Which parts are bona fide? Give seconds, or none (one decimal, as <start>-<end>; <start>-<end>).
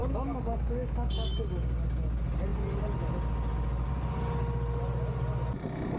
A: 1.5-6.0